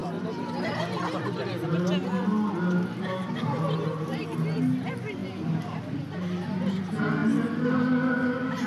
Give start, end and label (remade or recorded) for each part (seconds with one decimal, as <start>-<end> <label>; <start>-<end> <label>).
0.0-1.5 remade; 1.5-8.7 recorded